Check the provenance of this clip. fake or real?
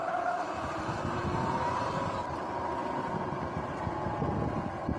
real